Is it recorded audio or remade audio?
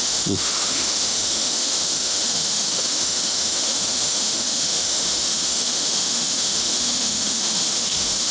remade